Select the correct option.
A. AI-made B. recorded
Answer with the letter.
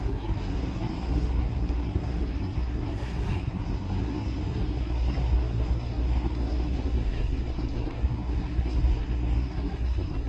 A